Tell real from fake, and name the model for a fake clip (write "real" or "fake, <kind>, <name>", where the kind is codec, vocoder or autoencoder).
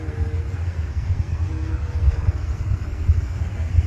fake, codec, SNAC